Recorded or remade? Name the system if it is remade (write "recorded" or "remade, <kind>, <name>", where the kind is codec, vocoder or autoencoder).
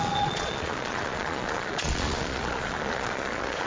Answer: remade, vocoder, Vocos